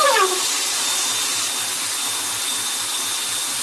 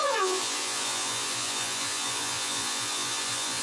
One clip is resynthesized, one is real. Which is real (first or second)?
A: first